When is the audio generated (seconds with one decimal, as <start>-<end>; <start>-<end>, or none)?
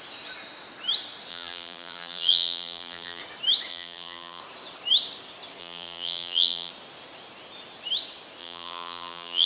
1.3-3.2; 3.7-4.4; 5.6-6.7; 8.4-9.5